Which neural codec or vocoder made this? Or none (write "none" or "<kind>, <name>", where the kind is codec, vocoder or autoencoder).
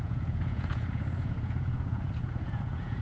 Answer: vocoder, Vocos